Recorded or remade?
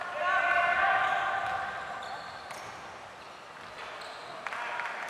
recorded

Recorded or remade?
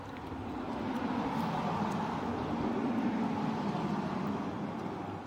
recorded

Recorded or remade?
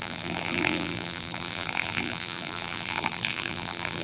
remade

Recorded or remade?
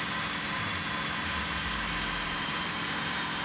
remade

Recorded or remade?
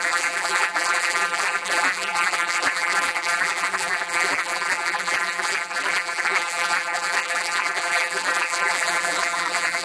remade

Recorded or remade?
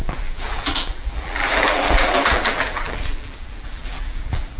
remade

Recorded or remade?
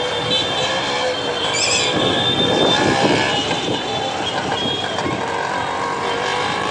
remade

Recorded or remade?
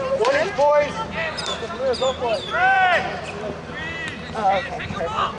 remade